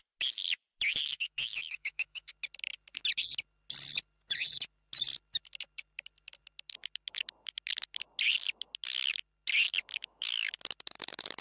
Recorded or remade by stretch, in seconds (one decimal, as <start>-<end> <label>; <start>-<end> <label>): 0.0-1.0 recorded; 1.0-2.3 remade; 2.3-9.9 recorded; 9.9-10.5 remade; 10.5-11.4 recorded